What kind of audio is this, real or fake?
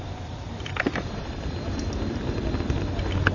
real